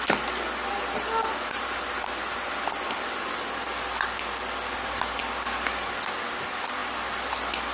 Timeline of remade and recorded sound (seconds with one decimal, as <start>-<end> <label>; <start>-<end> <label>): 0.0-7.7 recorded